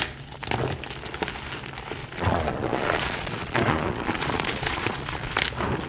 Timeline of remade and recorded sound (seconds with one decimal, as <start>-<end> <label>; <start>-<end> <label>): 0.0-2.0 recorded; 2.0-5.4 remade; 5.4-5.9 recorded